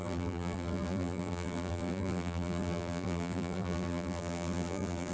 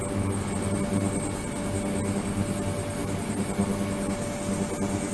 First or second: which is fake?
first